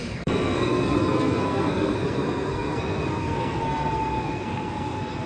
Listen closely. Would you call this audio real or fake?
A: fake